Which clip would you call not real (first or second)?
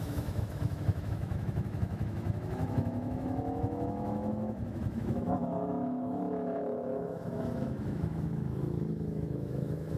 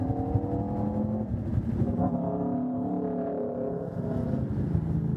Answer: first